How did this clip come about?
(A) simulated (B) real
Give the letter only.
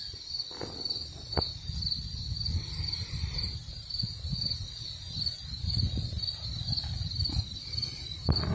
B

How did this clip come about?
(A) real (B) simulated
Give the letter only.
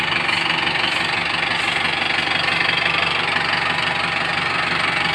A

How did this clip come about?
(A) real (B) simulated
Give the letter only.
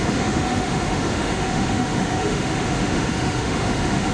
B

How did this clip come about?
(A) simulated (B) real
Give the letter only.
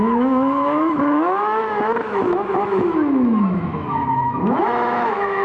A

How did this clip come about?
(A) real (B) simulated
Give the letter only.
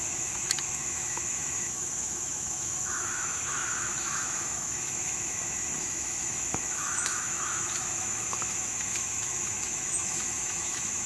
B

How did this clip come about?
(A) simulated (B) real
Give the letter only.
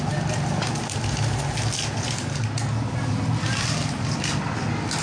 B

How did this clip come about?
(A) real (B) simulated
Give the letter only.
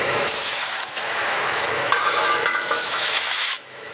B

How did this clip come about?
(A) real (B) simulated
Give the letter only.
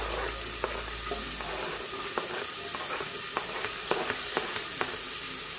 A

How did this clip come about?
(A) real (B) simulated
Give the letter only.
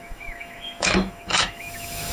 B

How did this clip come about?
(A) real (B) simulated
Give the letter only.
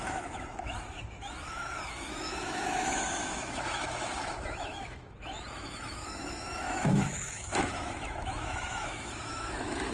B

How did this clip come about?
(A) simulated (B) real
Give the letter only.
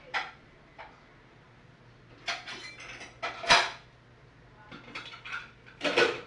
B